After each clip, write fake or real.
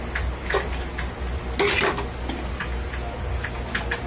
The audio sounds real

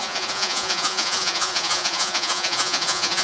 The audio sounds fake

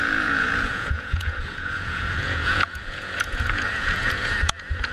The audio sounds fake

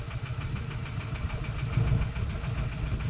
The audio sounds real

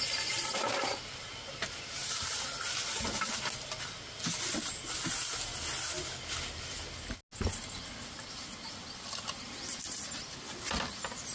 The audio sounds real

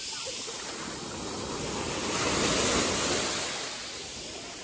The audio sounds real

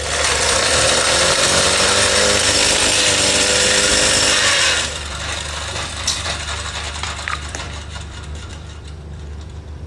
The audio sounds fake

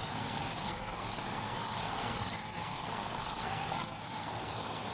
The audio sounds fake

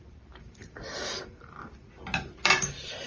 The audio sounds fake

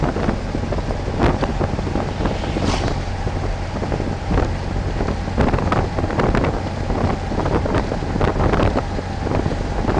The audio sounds real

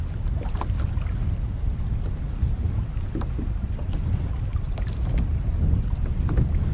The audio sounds real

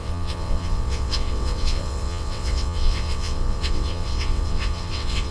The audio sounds fake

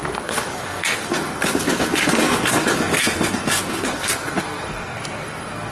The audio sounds fake